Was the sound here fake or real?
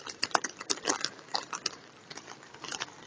fake